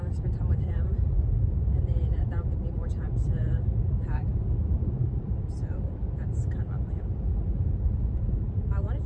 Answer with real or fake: fake